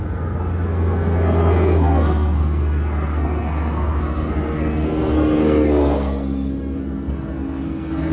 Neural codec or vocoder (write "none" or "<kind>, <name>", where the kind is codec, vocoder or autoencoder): codec, SNAC